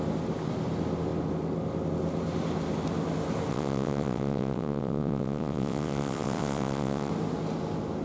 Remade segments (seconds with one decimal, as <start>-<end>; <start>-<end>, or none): 3.5-7.1